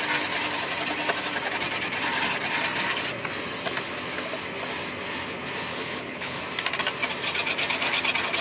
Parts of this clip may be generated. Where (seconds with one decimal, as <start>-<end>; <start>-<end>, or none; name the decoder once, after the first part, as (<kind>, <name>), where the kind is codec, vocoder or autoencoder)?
5.7-6.4 (codec, HILCodec)